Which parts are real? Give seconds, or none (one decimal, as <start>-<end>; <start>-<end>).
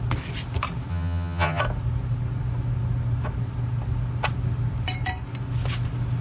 0.0-0.9; 1.6-6.2